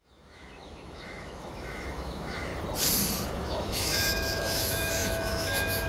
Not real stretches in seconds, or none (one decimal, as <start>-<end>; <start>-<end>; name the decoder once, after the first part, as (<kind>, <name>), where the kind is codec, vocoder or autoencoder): 0.0-2.5 (autoencoder, DAC-VAE); 3.3-5.9